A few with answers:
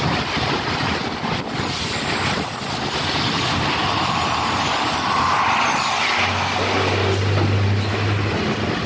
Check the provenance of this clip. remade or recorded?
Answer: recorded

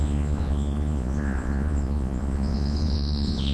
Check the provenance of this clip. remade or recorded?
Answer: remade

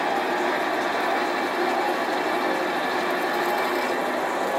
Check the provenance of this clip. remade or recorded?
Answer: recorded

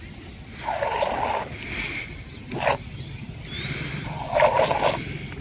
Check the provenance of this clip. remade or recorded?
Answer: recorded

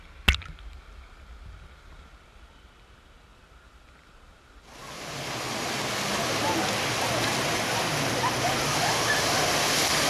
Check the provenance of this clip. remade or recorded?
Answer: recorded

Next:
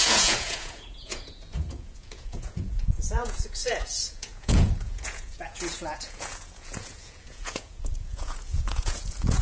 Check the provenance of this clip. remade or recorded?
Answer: remade